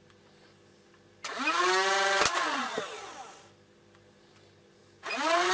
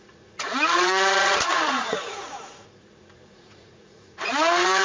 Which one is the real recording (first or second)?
first